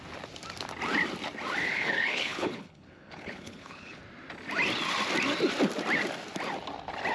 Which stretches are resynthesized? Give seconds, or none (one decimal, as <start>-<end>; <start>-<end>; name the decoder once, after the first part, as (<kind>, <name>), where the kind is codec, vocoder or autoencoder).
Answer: 1.6-4.0 (codec, HILCodec)